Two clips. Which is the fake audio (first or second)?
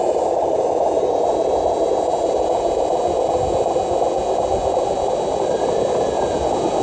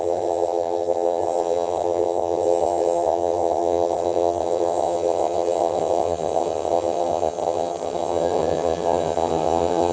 second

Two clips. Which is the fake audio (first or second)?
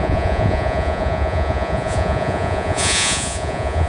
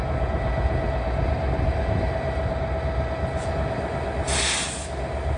first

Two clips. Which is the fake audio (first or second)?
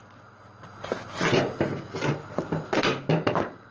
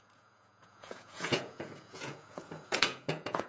second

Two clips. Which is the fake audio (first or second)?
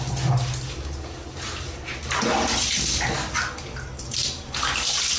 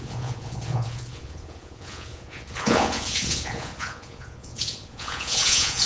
second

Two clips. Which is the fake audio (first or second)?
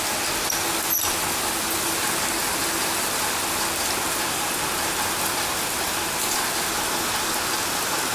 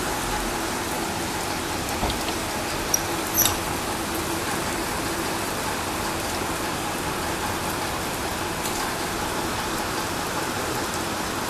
second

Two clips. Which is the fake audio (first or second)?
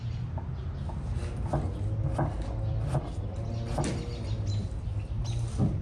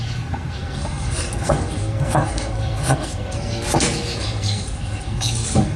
second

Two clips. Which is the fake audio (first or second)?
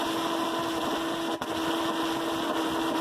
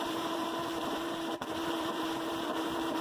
second